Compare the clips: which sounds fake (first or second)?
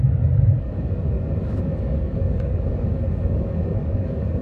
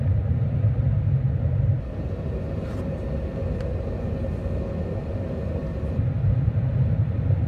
first